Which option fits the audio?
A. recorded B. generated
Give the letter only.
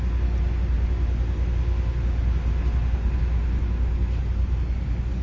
A